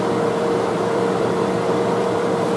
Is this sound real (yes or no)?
no